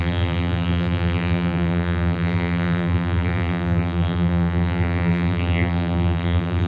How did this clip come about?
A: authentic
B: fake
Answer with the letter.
B